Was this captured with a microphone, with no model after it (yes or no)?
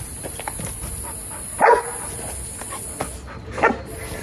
yes